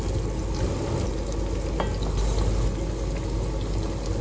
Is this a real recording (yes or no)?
yes